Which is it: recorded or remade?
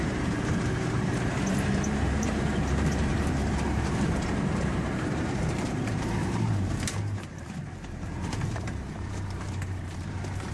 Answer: remade